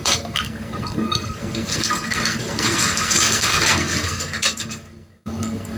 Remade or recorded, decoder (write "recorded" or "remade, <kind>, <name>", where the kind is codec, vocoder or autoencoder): remade, codec, SNAC